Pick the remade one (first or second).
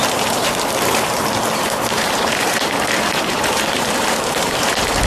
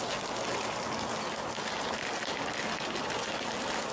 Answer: first